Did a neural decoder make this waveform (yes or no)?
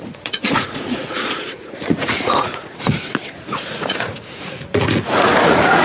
yes